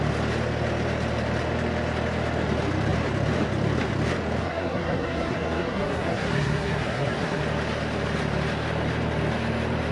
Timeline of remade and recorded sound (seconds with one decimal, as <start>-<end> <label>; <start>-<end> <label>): 0.0-4.4 recorded; 4.4-7.4 remade; 7.4-9.9 recorded